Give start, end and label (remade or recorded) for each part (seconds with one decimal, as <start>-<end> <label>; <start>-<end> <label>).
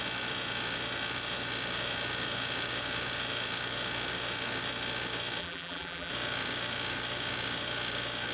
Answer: 0.0-5.4 recorded; 5.4-6.1 remade; 6.1-8.3 recorded